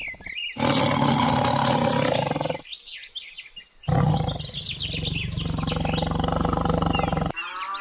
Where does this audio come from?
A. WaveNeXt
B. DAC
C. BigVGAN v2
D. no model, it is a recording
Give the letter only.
D